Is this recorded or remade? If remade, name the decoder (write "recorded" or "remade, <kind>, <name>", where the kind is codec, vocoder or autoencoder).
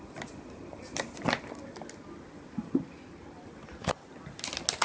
recorded